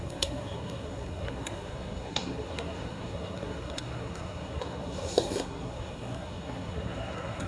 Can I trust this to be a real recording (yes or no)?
no